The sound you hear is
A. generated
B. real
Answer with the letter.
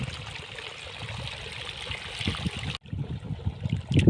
B